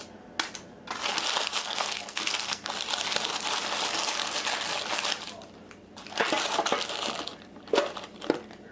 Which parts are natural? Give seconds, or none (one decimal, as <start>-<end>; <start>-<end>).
0.0-1.5; 2.7-8.7